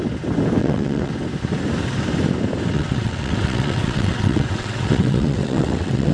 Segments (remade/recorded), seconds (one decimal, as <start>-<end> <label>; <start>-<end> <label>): 0.0-0.6 recorded; 0.6-1.1 remade; 1.1-2.7 recorded; 2.7-6.1 remade